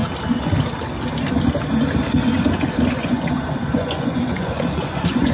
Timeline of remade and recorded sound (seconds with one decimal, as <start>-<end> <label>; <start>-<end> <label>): 0.0-2.8 recorded; 2.8-5.3 remade